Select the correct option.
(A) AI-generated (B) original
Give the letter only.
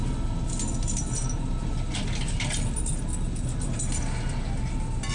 B